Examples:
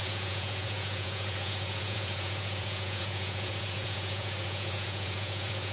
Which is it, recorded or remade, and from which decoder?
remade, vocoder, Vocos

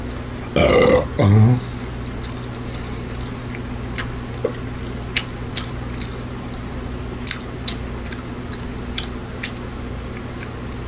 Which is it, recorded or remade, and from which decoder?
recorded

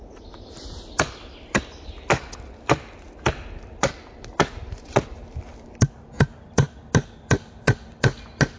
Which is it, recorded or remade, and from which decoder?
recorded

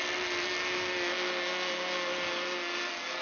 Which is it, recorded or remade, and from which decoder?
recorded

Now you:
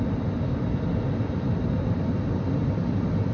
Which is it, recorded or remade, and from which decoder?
recorded